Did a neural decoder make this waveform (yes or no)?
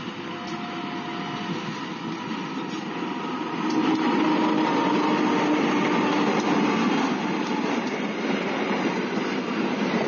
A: no